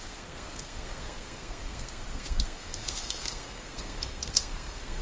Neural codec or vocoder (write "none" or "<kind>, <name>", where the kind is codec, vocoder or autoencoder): codec, SNAC